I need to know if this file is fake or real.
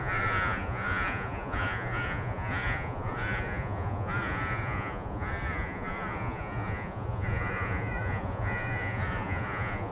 fake